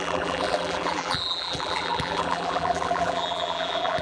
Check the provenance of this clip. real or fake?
fake